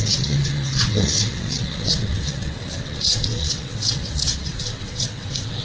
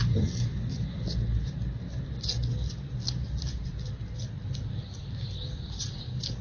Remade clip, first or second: first